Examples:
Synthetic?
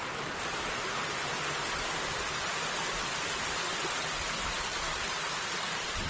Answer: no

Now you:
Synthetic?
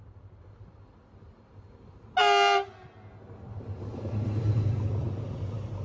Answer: no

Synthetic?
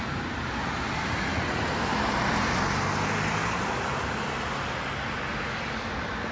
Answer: no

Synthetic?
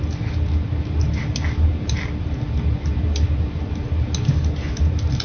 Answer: no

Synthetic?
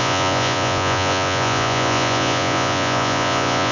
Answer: yes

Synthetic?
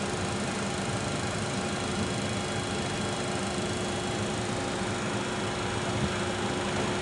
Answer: no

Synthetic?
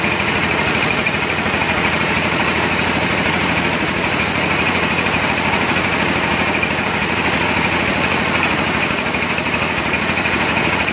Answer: yes